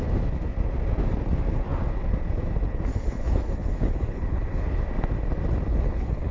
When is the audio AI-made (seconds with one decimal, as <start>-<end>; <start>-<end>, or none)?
2.9-4.8; 5.7-6.3